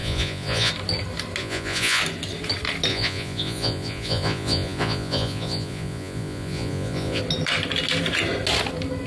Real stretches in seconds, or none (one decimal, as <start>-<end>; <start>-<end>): 0.7-1.4; 2.0-2.9; 7.2-9.1